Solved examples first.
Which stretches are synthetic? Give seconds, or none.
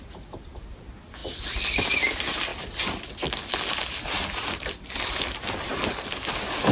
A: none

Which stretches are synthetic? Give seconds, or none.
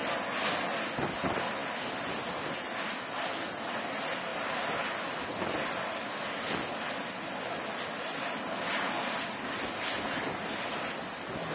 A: none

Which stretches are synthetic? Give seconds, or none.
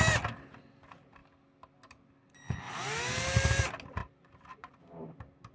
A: 4.0-4.8 (vocoder, BigVGAN v2)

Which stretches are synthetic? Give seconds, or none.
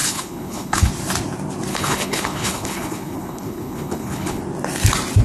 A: 0.0-0.9 (codec, HILCodec); 1.7-4.4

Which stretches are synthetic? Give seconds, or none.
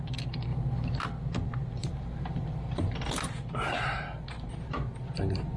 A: 1.8-5.6 (vocoder, BigVGAN v2)